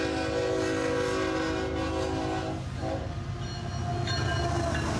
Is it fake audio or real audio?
real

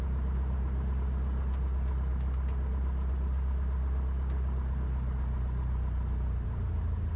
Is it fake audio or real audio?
real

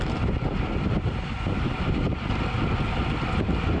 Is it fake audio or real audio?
real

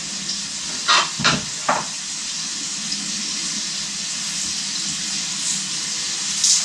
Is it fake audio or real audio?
real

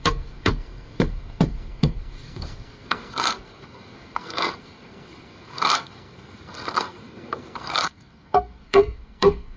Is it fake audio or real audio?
fake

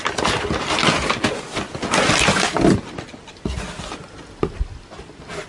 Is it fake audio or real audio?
real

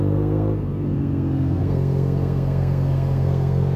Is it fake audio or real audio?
fake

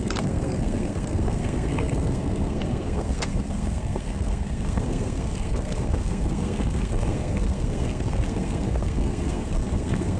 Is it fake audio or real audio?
fake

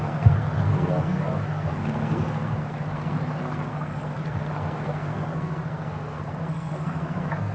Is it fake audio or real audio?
fake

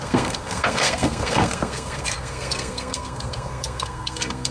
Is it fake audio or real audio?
fake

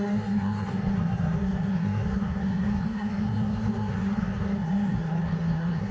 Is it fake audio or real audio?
fake